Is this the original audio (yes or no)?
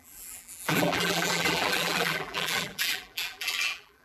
no